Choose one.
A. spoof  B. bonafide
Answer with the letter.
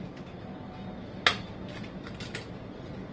B